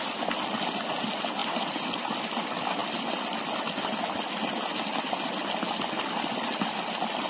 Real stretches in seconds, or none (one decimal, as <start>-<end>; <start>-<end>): 0.0-1.4; 2.2-2.8; 4.3-7.3